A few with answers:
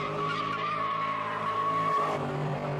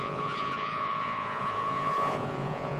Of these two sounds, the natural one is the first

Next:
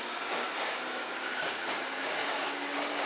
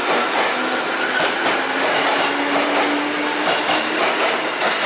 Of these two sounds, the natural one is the second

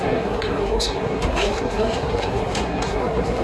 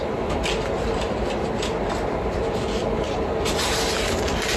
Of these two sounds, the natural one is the second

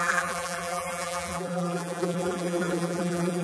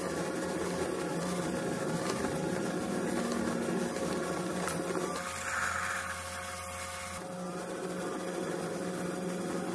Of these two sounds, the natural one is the second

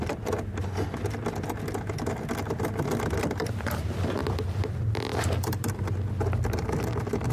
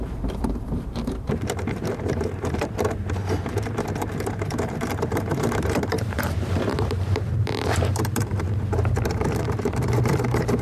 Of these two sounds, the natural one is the first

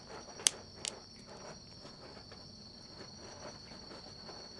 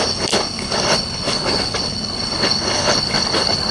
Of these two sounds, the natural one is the first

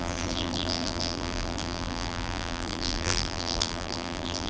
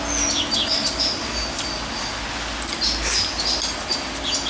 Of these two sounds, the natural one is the second